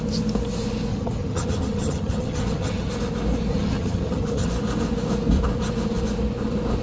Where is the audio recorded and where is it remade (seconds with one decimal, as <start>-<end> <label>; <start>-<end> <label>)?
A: 0.0-0.9 recorded; 0.9-2.9 remade; 2.9-3.5 recorded; 3.5-4.5 remade; 4.5-6.8 recorded